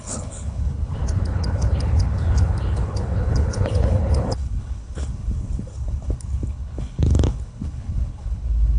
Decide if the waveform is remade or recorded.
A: remade